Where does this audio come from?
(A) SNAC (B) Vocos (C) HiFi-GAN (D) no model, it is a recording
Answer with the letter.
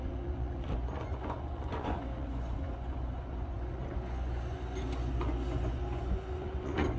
B